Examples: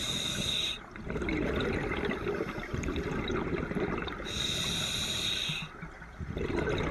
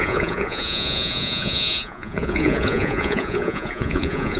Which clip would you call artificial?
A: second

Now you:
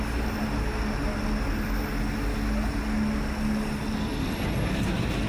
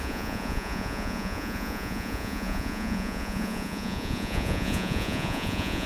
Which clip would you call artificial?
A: second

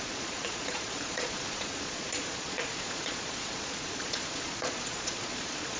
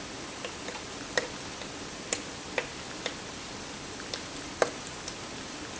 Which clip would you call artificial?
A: first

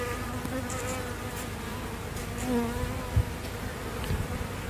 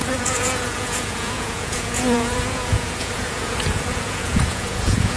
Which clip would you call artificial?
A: second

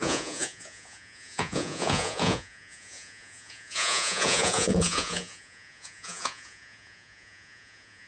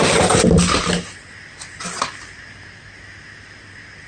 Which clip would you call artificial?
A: first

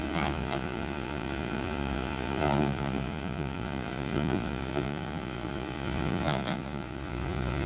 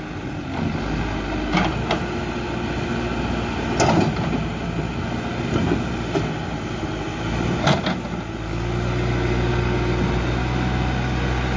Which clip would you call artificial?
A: first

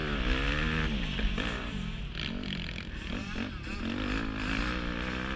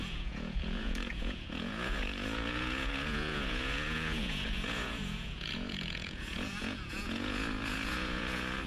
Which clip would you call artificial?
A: second